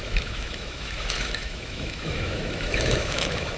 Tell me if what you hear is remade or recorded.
remade